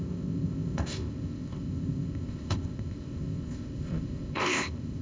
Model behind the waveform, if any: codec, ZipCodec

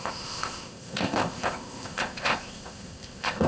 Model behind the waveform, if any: codec, ZipCodec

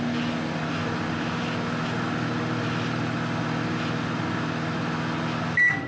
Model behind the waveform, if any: none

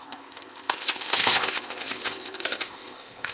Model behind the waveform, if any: codec, ZipCodec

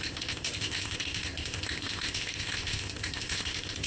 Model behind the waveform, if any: codec, ZipCodec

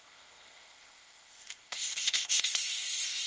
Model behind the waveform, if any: codec, ZipCodec